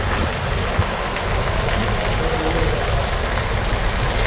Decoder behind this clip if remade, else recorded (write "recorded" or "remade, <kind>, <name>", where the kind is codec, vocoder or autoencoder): recorded